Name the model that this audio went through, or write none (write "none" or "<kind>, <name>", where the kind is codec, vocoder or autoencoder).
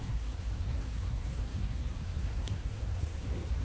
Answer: codec, SNAC